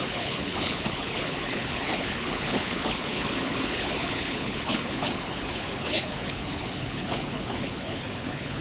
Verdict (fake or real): fake